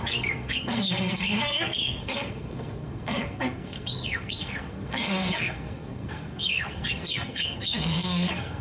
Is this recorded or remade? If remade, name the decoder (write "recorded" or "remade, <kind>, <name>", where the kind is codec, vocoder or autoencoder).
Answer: remade, codec, SNAC